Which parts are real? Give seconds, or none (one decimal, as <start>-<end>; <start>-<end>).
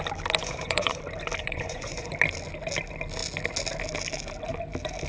0.0-0.4; 1.0-1.4; 2.1-5.1